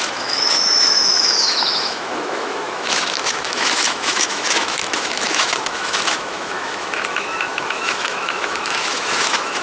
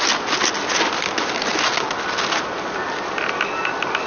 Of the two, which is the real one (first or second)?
second